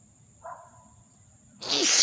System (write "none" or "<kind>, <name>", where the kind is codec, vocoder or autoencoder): none